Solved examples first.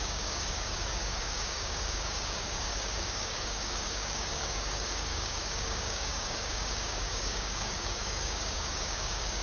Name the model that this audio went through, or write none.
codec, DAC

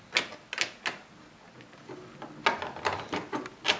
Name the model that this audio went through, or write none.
none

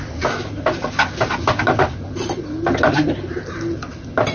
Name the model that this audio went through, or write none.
none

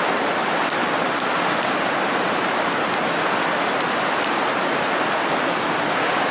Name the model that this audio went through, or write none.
none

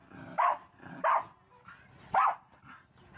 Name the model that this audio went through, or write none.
none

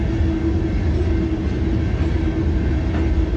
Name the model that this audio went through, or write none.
none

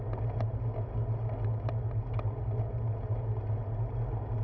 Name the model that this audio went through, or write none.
none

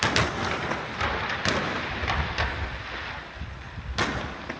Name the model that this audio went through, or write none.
none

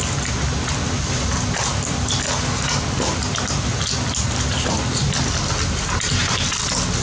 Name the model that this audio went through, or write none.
none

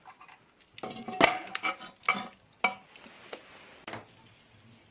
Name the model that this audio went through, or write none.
none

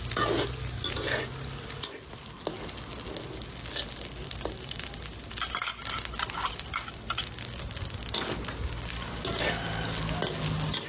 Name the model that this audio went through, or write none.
none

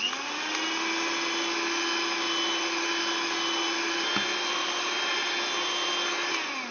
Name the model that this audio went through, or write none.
none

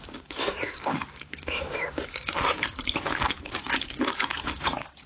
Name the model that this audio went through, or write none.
codec, DAC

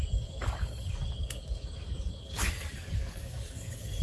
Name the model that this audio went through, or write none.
codec, DAC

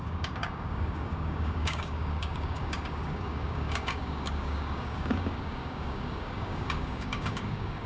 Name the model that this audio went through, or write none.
codec, DAC